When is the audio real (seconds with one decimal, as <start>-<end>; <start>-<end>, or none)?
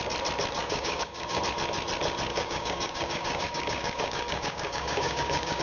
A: 0.0-0.6; 1.4-2.3